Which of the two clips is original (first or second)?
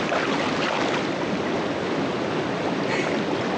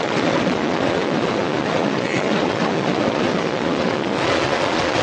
first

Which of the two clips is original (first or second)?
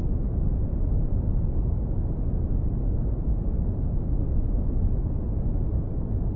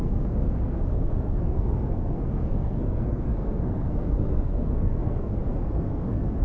first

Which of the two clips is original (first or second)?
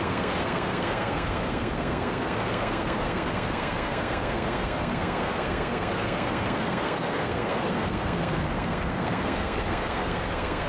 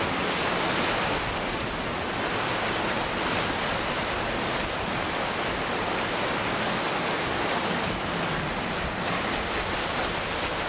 second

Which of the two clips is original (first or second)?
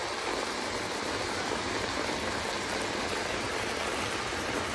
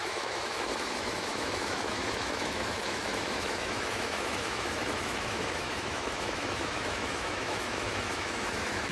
first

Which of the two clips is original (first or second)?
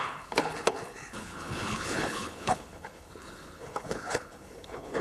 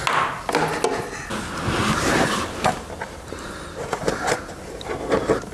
second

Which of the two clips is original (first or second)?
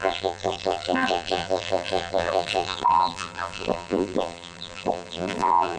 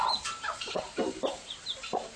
second